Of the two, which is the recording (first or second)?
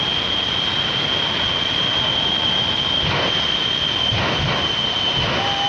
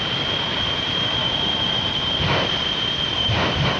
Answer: first